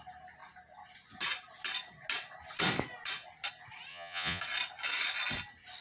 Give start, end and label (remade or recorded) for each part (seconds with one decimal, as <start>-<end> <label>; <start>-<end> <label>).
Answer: 0.0-3.9 recorded; 3.9-4.4 remade; 4.4-5.8 recorded